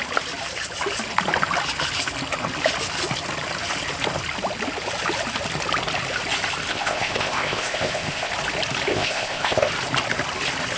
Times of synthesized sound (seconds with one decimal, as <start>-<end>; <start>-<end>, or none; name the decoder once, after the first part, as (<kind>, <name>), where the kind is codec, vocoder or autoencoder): 6.7-8.3 (codec, ZipCodec); 8.9-9.7